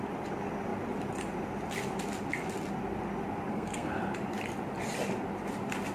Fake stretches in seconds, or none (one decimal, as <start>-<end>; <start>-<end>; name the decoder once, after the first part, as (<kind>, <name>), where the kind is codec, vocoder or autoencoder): 3.5-4.0 (codec, SNAC)